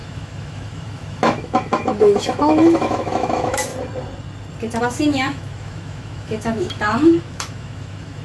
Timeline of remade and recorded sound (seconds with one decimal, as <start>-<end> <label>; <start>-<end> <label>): 0.0-3.7 remade; 3.7-4.8 recorded; 4.8-8.2 remade